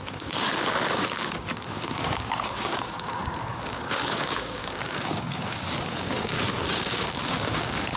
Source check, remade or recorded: remade